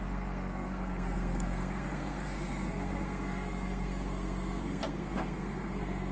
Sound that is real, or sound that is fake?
fake